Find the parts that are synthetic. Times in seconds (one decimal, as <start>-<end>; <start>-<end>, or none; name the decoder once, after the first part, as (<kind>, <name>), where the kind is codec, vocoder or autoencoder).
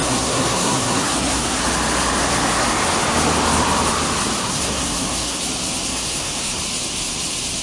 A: 0.0-1.6 (codec, SNAC); 4.4-5.4; 5.9-6.6